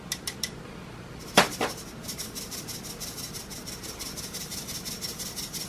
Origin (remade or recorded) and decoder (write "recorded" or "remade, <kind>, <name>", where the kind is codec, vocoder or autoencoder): recorded